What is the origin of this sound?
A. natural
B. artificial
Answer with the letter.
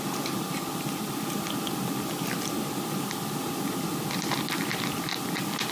A